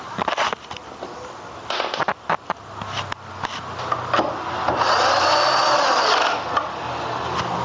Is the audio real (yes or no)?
yes